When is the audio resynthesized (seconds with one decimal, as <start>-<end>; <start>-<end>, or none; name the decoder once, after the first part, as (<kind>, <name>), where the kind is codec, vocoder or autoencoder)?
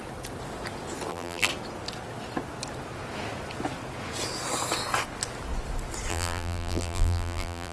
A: 1.1-1.5 (vocoder, BigVGAN v2); 6.1-7.7